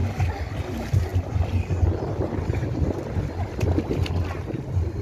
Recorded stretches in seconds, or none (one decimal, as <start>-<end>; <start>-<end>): 0.0-5.0